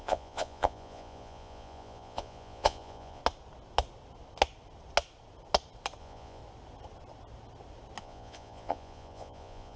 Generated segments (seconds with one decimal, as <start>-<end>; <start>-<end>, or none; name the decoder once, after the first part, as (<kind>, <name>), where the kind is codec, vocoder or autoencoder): 0.0-3.2 (vocoder, Vocos); 6.0-6.4; 8.0-9.8

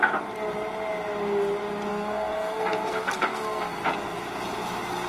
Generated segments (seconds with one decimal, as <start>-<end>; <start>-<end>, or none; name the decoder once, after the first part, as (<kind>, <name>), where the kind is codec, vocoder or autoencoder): 1.9-3.8 (codec, SNAC)